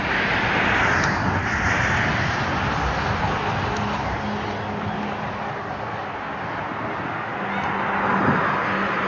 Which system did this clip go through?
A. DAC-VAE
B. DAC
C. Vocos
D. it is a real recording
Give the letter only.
D